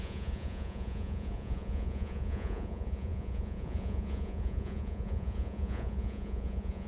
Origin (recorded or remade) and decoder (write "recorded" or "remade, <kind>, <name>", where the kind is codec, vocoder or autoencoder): remade, vocoder, Vocos